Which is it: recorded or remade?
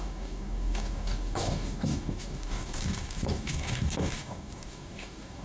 remade